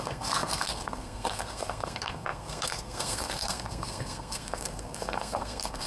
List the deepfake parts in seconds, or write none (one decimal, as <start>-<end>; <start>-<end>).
0.0-5.9